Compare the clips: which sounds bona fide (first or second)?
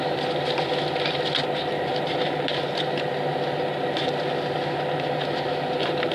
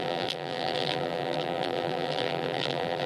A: first